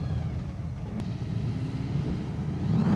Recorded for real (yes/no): yes